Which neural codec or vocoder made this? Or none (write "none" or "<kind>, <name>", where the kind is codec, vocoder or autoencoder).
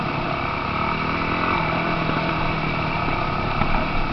none